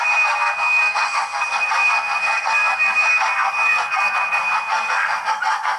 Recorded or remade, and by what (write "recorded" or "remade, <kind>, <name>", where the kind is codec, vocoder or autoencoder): remade, codec, SNAC